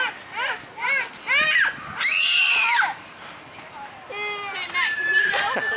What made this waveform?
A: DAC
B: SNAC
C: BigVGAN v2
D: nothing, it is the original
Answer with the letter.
D